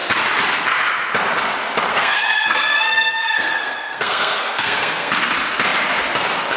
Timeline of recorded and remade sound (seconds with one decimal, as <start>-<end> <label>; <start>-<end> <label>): 0.0-1.9 recorded; 1.9-5.2 remade; 5.2-6.6 recorded